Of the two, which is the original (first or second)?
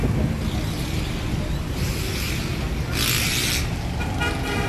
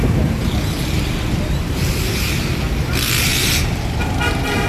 first